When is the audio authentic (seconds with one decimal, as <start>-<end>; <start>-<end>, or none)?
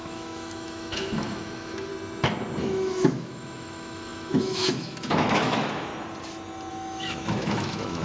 1.9-2.6; 5.9-6.7